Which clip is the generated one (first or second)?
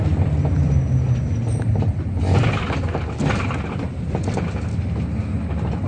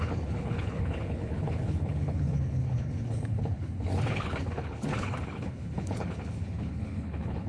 second